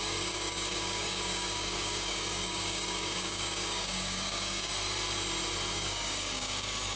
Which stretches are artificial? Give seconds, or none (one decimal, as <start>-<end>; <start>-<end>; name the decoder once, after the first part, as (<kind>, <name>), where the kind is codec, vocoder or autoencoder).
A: 0.0-4.7 (codec, DAC); 5.7-7.0